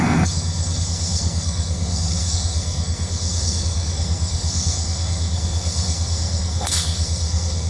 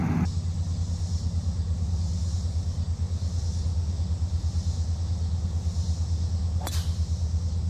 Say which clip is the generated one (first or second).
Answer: first